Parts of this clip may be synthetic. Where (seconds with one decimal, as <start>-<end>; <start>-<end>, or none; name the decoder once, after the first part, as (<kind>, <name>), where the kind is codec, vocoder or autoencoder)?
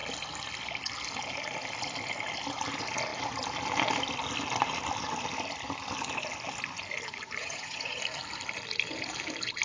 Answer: 7.4-8.0 (vocoder, HiFi-GAN)